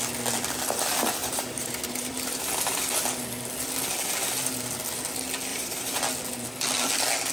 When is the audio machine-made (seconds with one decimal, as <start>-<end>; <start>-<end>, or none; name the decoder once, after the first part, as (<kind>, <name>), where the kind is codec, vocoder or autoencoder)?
1.2-2.4 (vocoder, BigVGAN v2); 5.5-6.0